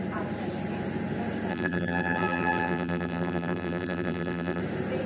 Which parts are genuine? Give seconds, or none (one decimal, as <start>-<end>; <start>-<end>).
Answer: 0.0-1.5; 4.6-5.1